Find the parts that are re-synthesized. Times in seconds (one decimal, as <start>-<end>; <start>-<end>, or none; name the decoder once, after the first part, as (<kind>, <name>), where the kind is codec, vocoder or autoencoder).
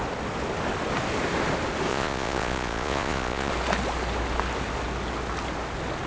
1.9-3.5 (vocoder, Vocos)